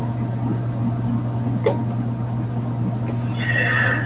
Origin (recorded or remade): recorded